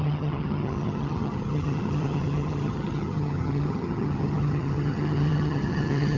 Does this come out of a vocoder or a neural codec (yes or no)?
yes